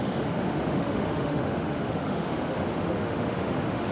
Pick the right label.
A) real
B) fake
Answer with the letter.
B